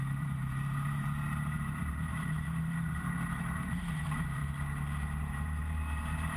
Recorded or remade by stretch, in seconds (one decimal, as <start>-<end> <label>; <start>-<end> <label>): 0.0-4.4 remade; 4.4-5.2 recorded; 5.2-6.4 remade